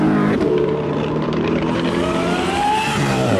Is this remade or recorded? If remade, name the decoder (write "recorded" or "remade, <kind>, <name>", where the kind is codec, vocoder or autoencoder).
remade, vocoder, BigVGAN v2